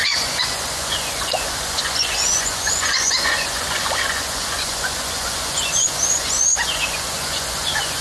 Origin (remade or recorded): remade